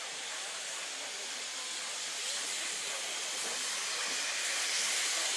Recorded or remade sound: recorded